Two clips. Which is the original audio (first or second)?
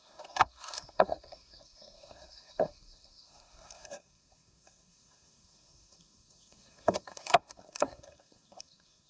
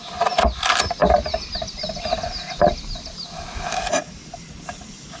second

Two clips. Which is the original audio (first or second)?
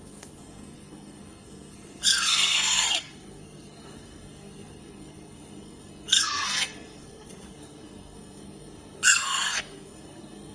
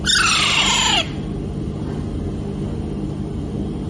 second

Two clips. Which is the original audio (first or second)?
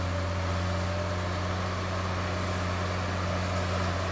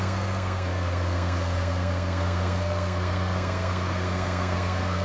first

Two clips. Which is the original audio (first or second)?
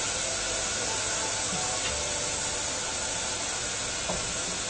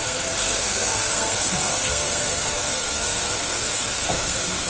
first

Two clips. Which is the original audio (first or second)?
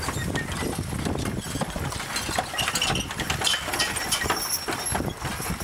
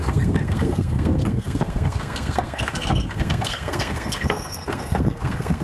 first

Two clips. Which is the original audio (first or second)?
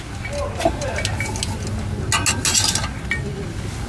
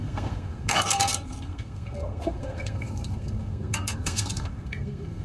first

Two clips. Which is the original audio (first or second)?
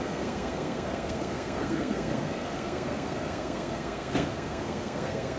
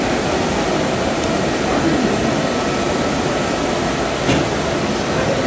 second